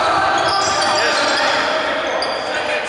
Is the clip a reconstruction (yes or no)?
no